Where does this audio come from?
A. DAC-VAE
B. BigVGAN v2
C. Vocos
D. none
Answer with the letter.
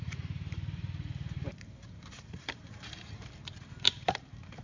B